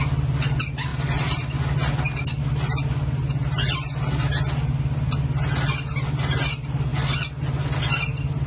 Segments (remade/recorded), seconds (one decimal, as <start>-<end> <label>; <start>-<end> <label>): 0.0-8.5 recorded